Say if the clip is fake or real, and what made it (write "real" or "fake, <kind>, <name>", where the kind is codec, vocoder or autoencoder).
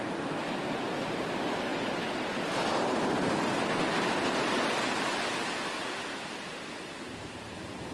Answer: fake, vocoder, BigVGAN v2